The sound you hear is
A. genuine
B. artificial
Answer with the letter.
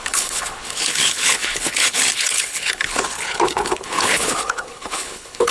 B